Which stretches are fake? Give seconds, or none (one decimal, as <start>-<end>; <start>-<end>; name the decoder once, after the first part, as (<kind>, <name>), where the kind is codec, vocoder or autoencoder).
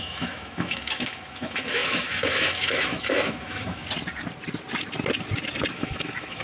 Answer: 0.0-3.8 (autoencoder, DAC-VAE); 5.7-6.4